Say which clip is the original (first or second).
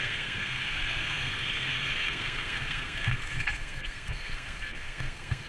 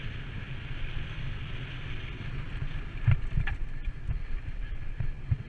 second